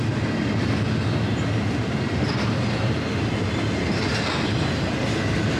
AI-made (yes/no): no